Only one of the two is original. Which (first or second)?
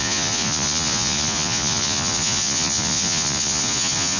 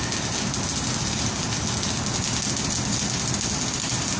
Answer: second